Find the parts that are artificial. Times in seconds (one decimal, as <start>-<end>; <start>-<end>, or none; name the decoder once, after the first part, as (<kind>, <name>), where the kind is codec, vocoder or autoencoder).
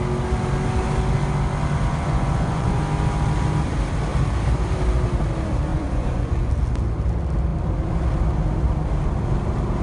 1.9-2.8 (vocoder, Vocos); 5.7-6.5